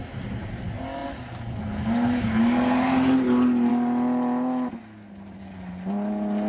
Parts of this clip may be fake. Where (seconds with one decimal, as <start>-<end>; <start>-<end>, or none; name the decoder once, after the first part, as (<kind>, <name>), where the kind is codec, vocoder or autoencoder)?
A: none